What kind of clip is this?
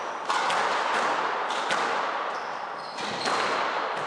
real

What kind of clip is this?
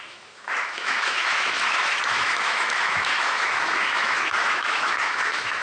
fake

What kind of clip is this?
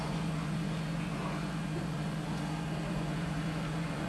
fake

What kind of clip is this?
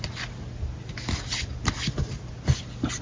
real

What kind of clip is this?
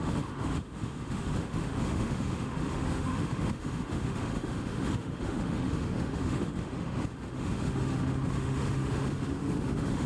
fake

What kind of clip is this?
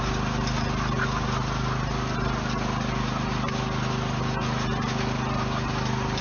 real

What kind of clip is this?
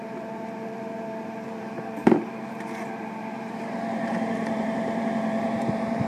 fake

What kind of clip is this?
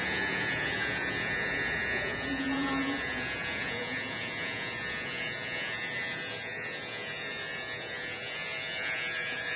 fake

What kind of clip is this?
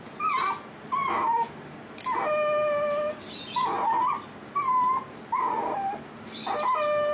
real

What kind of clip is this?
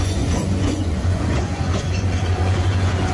fake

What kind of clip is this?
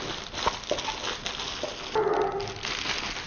real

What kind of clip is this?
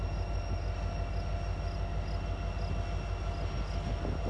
real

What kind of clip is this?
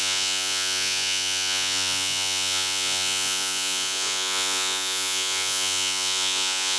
fake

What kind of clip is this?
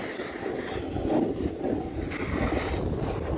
real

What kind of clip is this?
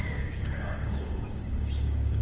fake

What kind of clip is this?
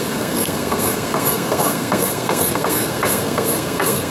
fake